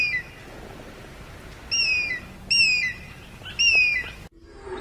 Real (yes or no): yes